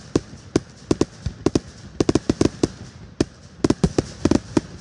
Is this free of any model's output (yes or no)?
yes